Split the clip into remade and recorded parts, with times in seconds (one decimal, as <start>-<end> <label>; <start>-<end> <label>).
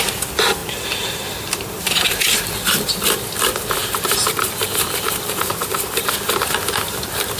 0.0-0.6 recorded; 0.6-2.1 remade; 2.1-3.8 recorded; 3.8-6.1 remade; 6.1-7.4 recorded